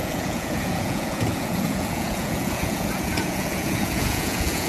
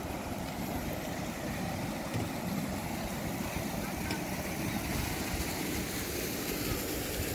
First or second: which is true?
second